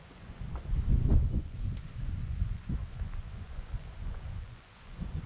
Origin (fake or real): fake